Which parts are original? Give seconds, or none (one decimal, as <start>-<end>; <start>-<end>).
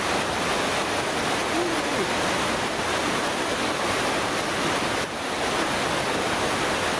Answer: 0.0-1.4; 3.2-7.0